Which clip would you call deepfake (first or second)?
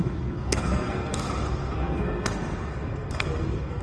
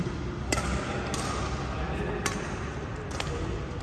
first